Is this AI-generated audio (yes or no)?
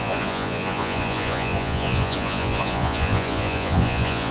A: yes